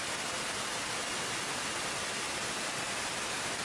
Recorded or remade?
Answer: recorded